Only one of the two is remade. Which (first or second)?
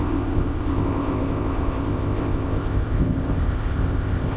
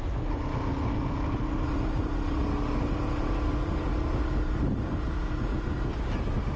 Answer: first